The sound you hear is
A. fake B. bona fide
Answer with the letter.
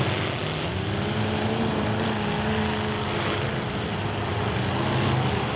B